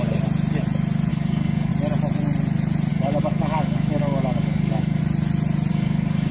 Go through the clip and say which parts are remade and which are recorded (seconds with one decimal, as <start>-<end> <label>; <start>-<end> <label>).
0.0-1.1 recorded; 1.1-1.7 remade; 1.7-2.9 recorded; 2.9-5.0 remade; 5.0-5.7 recorded; 5.7-6.3 remade